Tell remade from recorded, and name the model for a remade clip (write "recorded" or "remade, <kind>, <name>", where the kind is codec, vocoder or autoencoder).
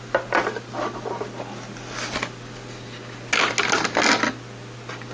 recorded